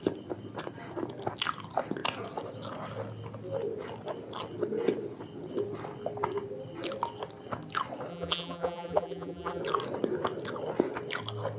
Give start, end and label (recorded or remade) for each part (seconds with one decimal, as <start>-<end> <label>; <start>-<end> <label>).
0.0-8.1 recorded; 8.1-9.6 remade; 9.6-11.6 recorded

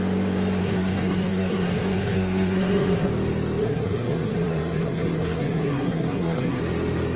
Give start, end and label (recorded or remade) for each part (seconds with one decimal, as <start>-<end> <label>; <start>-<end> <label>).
0.0-0.6 recorded; 0.6-3.1 remade; 3.1-3.6 recorded; 3.6-6.6 remade; 6.6-7.2 recorded

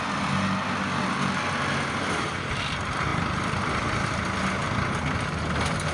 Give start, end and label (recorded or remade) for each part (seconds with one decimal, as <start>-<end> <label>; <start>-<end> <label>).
0.0-5.9 recorded